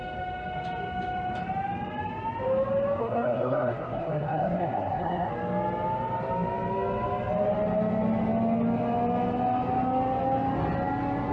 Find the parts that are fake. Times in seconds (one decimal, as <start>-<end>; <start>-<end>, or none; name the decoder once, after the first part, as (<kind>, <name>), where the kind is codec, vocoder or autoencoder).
3.0-5.3 (codec, SNAC)